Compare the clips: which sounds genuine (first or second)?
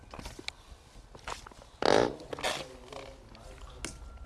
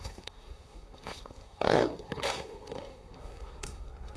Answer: first